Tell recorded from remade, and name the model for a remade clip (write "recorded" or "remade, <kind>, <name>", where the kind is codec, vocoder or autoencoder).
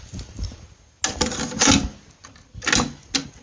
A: recorded